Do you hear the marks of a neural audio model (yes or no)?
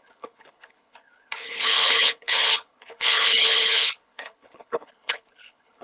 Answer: yes